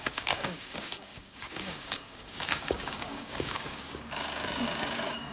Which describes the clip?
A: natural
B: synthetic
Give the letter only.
B